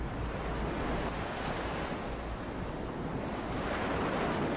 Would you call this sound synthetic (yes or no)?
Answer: no